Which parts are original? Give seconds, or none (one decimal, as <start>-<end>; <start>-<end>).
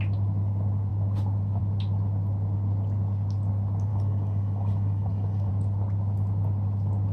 0.0-3.9; 5.5-7.1